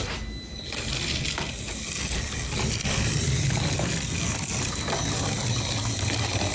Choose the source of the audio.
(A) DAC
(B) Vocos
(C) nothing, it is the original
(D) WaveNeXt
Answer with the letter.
C